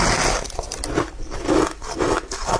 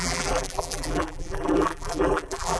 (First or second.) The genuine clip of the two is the first